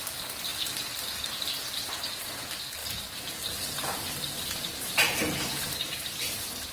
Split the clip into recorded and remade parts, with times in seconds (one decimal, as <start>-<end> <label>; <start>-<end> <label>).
0.0-0.5 recorded; 0.5-1.5 remade; 1.5-2.8 recorded; 2.8-6.7 remade